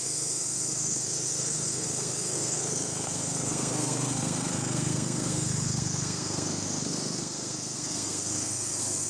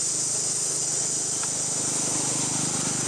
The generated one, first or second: first